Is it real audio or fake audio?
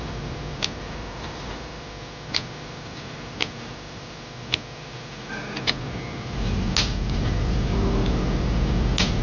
real